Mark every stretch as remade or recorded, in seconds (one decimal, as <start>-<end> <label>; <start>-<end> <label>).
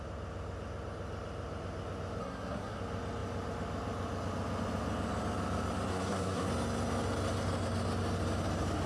0.0-2.2 recorded; 2.2-2.8 remade; 2.8-5.9 recorded; 5.9-6.5 remade; 6.5-8.9 recorded